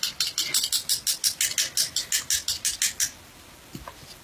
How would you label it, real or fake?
real